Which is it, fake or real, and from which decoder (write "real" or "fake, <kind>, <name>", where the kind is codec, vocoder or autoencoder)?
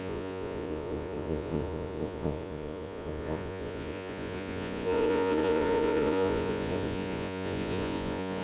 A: fake, vocoder, Vocos